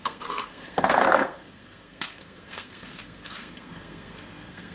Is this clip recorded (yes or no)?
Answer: no